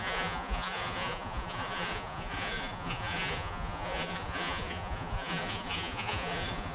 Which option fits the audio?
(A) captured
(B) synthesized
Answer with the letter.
B